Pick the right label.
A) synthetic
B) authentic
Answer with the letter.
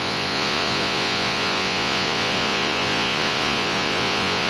A